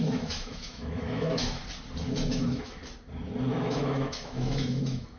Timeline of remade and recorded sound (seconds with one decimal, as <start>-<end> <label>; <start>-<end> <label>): 0.0-1.6 remade; 1.6-2.3 recorded; 2.3-2.8 remade; 2.8-3.5 recorded; 3.5-5.2 remade